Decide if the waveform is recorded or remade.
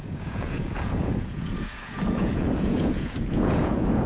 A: remade